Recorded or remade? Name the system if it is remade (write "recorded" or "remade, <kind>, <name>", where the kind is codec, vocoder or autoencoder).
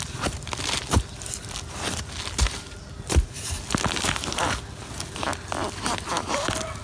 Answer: recorded